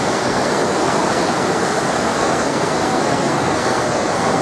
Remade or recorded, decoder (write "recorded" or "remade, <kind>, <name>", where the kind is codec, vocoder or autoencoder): remade, codec, SNAC